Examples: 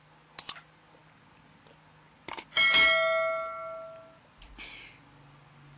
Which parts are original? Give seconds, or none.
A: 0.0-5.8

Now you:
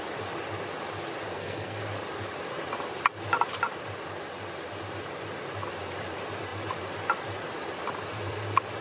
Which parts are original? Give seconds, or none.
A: 0.0-1.3; 1.8-8.8

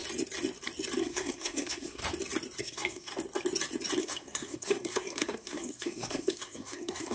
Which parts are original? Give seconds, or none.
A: 0.0-1.0; 2.0-2.6; 3.1-4.0

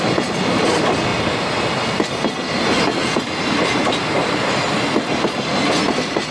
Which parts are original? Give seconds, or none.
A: 0.0-6.3